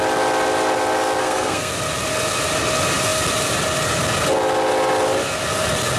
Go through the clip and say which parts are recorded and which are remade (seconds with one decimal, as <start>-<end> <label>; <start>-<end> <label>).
0.0-1.2 recorded; 1.2-1.7 remade; 1.7-6.0 recorded